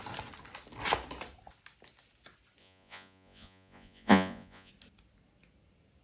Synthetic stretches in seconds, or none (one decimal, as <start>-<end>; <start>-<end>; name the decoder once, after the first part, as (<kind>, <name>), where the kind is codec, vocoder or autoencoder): 2.6-4.7 (vocoder, Vocos)